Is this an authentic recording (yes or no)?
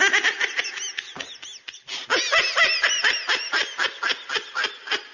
yes